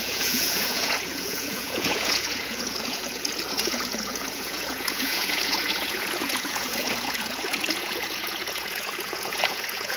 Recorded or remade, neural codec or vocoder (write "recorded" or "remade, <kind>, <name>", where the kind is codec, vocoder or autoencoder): remade, vocoder, Vocos